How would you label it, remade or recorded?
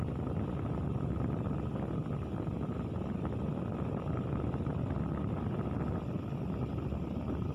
recorded